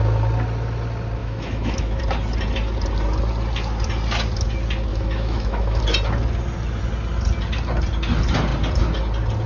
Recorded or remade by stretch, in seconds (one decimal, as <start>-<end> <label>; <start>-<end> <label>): 0.0-1.2 recorded; 1.2-2.0 remade; 2.0-4.9 recorded; 4.9-5.8 remade; 5.8-9.5 recorded